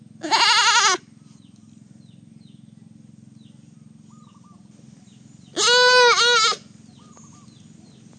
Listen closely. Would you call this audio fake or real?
real